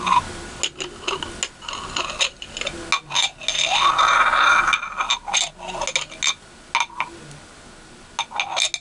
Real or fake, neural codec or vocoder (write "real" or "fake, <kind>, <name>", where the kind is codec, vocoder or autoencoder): real